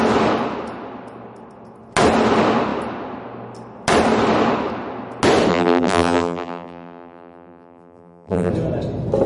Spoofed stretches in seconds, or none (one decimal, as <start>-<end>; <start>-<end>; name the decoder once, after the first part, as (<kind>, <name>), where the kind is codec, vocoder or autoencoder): 5.5-8.5 (vocoder, BigVGAN v2)